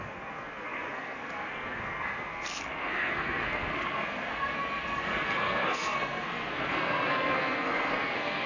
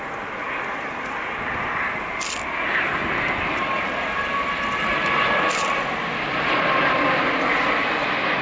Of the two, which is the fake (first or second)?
first